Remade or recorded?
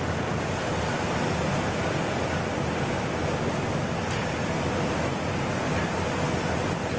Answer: recorded